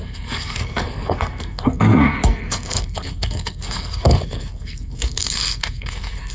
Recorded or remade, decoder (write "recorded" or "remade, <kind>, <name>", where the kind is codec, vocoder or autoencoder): remade, codec, SNAC